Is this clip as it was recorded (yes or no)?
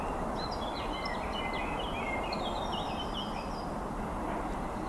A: yes